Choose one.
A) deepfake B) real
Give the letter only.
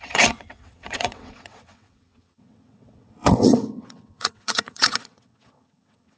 A